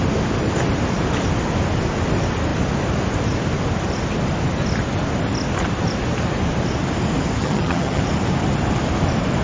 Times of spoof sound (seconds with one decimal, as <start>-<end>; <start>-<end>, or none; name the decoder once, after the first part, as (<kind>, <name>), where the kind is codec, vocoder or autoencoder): 7.4-8.0 (vocoder, HiFi-GAN)